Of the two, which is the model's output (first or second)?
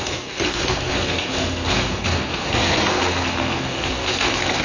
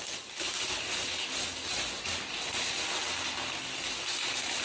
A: first